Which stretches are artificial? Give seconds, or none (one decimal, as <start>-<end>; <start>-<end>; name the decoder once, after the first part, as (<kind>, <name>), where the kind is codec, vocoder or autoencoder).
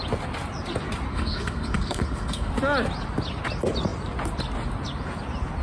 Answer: 1.1-2.5 (codec, SNAC)